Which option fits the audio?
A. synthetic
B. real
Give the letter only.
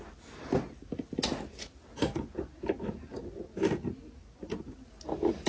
B